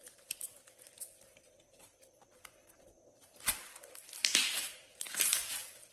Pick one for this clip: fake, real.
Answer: real